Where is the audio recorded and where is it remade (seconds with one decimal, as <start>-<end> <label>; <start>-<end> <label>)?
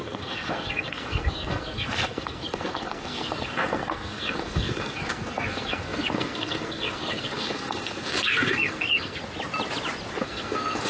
0.0-9.2 remade; 9.2-10.2 recorded; 10.2-10.9 remade